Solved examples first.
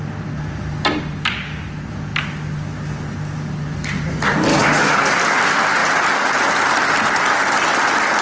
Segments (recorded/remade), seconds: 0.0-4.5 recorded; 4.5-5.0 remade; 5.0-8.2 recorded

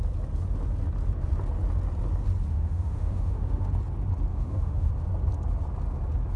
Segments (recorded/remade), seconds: 0.0-2.5 recorded; 2.5-3.7 remade; 3.7-4.3 recorded; 4.3-4.9 remade; 4.9-6.4 recorded

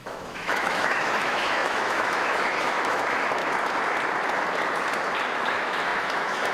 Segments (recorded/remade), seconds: 0.0-3.4 remade; 3.4-5.5 recorded; 5.5-6.5 remade

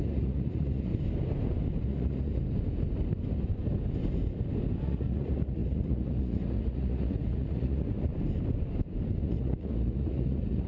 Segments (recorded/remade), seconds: 0.0-0.9 remade; 0.9-1.8 recorded; 1.8-2.3 remade; 2.3-4.8 recorded; 4.8-8.1 remade; 8.1-9.2 recorded; 9.2-10.7 remade